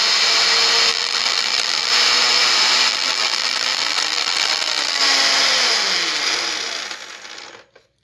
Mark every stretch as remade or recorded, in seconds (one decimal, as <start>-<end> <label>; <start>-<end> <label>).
0.0-0.9 recorded; 0.9-1.9 remade; 1.9-2.9 recorded; 2.9-5.0 remade; 5.0-8.0 recorded